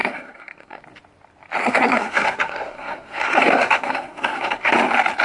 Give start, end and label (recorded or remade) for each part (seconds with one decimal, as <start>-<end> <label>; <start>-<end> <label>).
0.0-0.8 remade; 0.8-1.6 recorded; 1.6-4.7 remade; 4.7-5.2 recorded